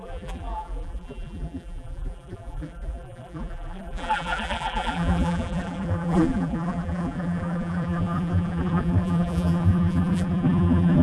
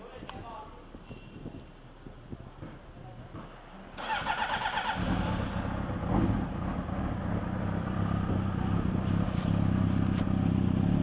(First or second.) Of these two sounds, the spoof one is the first